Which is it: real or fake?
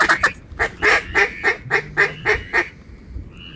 real